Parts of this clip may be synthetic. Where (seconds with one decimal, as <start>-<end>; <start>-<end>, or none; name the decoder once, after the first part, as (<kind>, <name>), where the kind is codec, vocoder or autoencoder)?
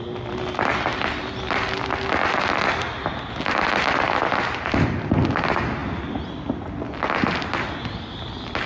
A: none